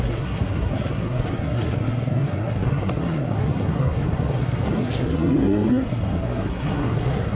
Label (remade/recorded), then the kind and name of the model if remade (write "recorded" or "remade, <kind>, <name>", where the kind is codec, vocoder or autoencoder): remade, codec, SNAC